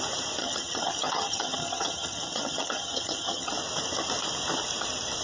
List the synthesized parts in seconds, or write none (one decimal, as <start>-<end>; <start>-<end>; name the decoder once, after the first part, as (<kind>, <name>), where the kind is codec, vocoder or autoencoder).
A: 0.4-3.5 (vocoder, HiFi-GAN)